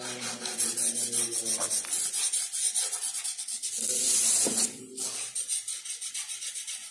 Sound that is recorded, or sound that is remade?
recorded